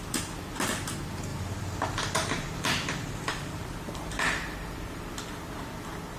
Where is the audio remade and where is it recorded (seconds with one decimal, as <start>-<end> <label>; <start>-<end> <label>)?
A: 0.0-1.3 recorded; 1.3-5.0 remade; 5.0-6.2 recorded